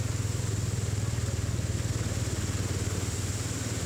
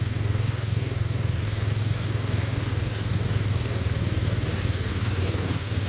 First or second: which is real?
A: first